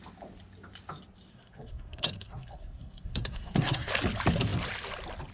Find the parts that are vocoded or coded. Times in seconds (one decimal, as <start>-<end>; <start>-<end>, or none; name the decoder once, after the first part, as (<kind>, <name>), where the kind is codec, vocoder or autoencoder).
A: 1.3-3.9 (codec, SNAC)